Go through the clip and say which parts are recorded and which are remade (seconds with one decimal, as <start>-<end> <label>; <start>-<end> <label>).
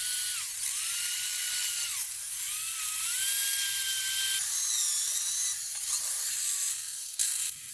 0.0-6.7 recorded; 6.7-7.7 remade